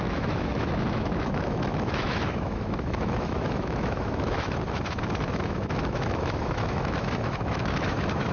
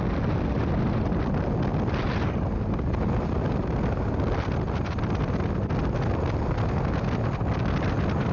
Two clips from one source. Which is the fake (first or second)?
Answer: first